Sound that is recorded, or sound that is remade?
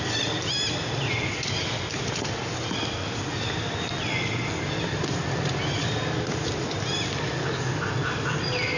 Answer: recorded